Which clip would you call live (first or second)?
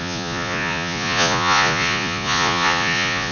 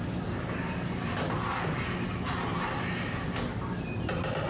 second